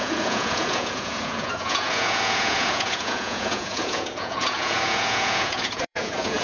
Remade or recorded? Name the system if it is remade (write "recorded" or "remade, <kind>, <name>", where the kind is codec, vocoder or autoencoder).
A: remade, vocoder, Vocos